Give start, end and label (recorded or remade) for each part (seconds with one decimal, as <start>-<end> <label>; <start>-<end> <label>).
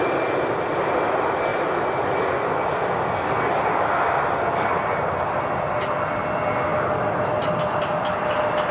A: 0.0-8.7 recorded